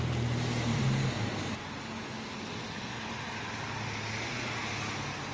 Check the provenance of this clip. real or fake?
real